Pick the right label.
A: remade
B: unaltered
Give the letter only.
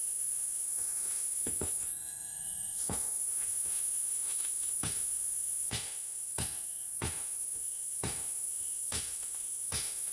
A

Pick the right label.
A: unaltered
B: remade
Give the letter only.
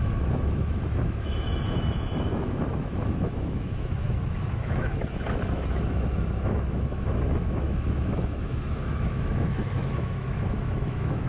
B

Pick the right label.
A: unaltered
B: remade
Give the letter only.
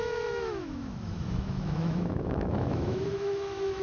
B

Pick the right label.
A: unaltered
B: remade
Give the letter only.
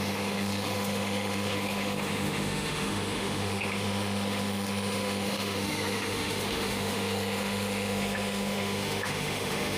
B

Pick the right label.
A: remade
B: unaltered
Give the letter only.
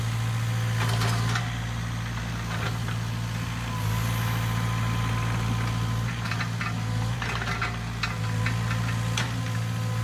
B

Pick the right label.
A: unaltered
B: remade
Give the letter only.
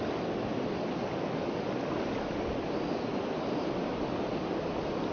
A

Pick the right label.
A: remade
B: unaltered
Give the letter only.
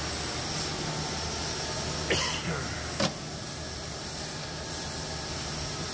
B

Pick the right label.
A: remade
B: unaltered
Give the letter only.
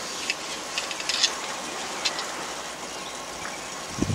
B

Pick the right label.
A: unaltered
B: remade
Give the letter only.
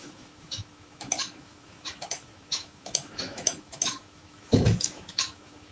B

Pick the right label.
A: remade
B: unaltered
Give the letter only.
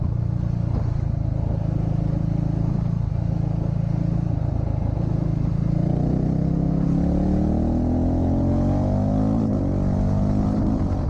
B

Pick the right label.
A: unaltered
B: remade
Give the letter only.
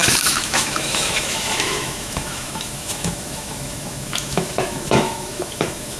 B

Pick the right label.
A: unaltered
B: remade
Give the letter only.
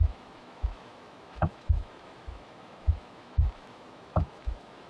B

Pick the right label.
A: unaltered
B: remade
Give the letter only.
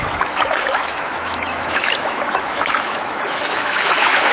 B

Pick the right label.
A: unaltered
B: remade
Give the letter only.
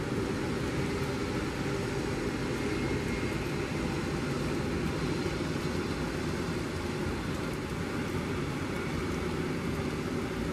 A